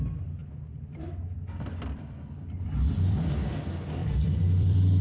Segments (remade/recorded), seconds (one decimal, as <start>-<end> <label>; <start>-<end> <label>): 0.0-0.4 recorded; 0.4-3.4 remade; 3.4-4.0 recorded; 4.0-5.0 remade